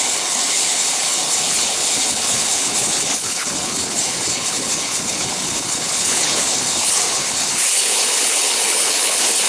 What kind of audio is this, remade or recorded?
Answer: remade